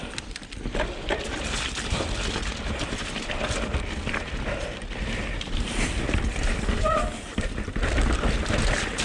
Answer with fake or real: fake